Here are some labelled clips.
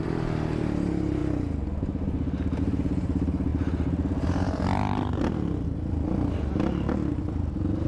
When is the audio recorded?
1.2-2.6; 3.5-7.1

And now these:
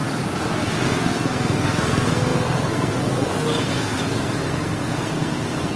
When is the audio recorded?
0.0-0.5

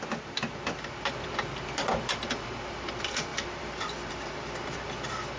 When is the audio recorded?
none

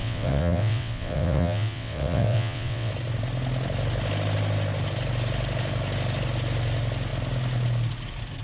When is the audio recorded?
2.9-8.4